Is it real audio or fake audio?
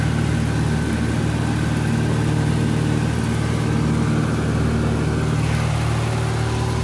real